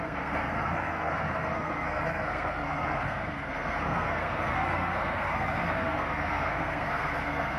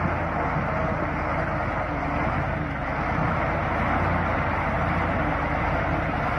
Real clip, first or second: second